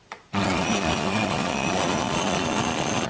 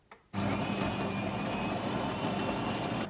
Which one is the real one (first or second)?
second